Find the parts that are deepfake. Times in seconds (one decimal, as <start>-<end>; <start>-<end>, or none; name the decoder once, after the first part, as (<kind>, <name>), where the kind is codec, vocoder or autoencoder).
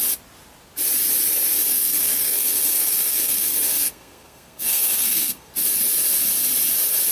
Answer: 1.7-5.5 (codec, SNAC)